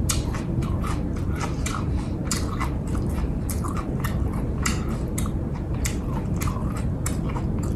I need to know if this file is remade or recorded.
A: remade